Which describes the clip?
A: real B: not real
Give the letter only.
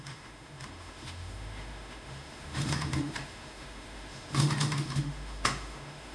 B